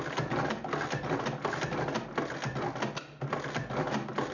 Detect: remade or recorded recorded